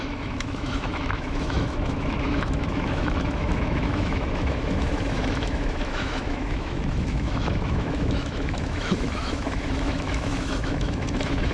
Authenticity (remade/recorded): remade